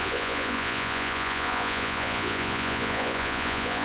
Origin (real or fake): fake